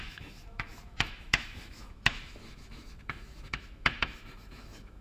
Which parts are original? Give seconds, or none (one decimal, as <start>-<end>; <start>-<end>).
none